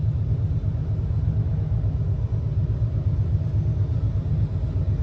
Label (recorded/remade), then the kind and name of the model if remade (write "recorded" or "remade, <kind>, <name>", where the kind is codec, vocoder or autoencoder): recorded